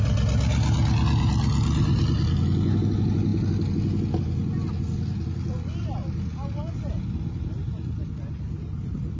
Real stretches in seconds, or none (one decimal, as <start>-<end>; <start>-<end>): 0.0-9.2